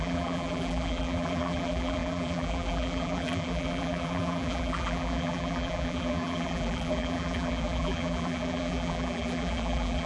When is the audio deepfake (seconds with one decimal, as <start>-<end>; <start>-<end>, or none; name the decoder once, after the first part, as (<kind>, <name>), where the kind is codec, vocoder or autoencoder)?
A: 0.0-10.1 (vocoder, BigVGAN v2)